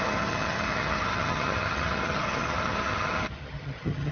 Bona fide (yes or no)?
no